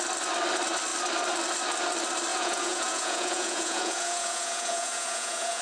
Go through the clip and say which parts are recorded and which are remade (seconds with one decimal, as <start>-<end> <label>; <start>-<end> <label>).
0.0-2.3 recorded; 2.3-5.6 remade